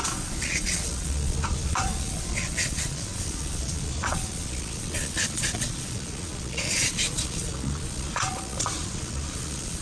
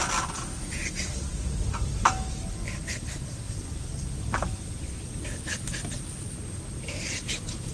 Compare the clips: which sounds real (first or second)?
second